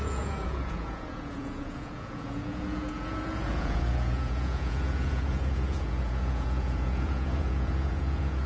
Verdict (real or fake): fake